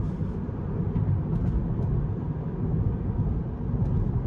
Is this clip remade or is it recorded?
recorded